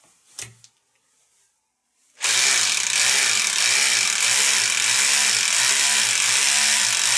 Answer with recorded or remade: recorded